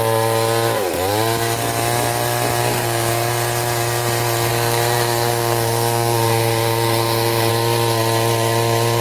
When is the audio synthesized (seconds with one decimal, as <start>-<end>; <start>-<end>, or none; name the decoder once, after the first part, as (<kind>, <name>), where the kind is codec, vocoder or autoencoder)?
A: 2.6-3.1 (codec, SNAC); 4.5-7.5